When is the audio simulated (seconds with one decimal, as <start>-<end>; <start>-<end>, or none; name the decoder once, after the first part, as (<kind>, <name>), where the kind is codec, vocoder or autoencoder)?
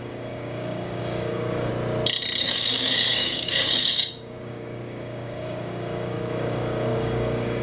0.0-1.7 (codec, DAC); 2.4-7.6